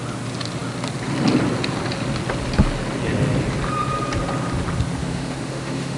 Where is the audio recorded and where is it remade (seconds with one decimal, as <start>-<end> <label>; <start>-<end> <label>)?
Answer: 0.0-5.0 recorded; 5.0-6.0 remade